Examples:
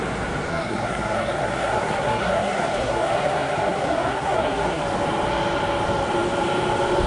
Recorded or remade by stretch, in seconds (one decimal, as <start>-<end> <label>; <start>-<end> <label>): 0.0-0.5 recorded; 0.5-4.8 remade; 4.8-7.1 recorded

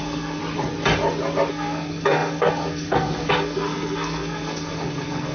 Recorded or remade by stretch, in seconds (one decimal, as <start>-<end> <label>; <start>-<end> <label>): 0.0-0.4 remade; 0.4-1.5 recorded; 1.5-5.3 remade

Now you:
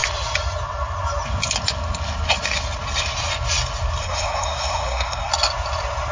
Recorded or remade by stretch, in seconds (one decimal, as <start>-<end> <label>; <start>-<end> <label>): 0.0-4.0 recorded; 4.0-5.3 remade; 5.3-6.1 recorded

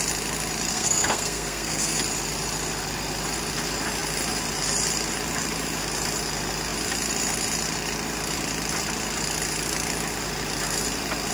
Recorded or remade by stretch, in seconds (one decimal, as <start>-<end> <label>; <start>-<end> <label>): 0.0-0.7 recorded; 0.7-2.0 remade; 2.0-11.3 recorded

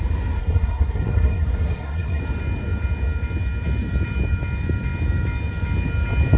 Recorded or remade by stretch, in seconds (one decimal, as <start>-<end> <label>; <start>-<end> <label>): 0.0-0.4 recorded; 0.4-2.2 remade; 2.2-6.4 recorded

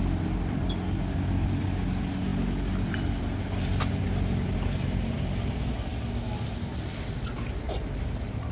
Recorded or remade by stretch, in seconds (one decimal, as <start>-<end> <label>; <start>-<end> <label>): 0.0-8.5 recorded

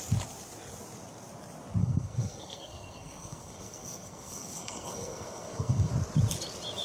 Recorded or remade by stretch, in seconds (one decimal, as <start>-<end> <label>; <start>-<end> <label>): 0.0-1.8 recorded; 1.8-5.9 remade; 5.9-6.8 recorded